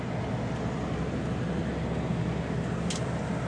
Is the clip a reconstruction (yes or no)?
no